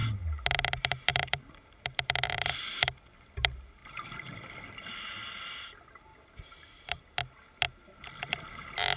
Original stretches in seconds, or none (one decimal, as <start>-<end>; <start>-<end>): 0.0-1.1; 3.8-4.9; 6.1-8.1